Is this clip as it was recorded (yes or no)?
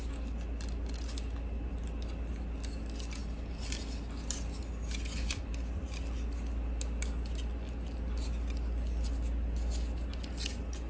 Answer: yes